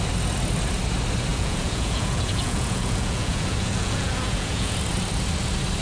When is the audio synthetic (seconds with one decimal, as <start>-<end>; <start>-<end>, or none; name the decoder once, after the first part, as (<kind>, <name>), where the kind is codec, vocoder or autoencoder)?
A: 1.3-4.8 (vocoder, Vocos)